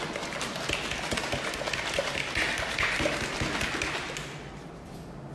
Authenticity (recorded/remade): recorded